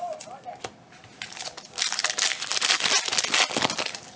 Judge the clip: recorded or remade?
recorded